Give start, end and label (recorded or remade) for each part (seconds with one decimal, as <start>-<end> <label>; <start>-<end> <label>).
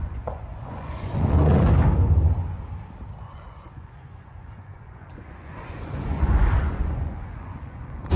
0.0-1.5 remade; 1.5-3.2 recorded; 3.2-8.2 remade